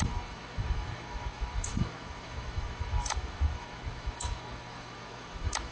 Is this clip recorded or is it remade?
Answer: remade